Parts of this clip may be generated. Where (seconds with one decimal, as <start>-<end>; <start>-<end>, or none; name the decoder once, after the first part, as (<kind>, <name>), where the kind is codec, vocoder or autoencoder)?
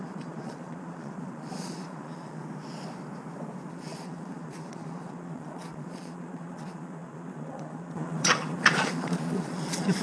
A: 0.0-2.4 (vocoder, Vocos); 3.7-10.0